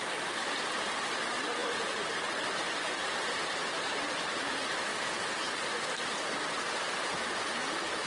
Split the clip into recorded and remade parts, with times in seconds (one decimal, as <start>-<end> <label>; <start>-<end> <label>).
0.0-4.9 remade; 4.9-7.2 recorded; 7.2-8.1 remade